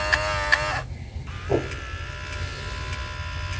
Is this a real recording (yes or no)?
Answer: yes